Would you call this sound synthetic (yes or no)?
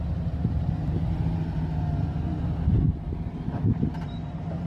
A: no